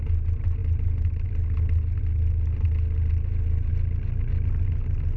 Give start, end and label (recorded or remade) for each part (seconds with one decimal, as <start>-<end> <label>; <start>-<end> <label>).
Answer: 0.0-5.2 recorded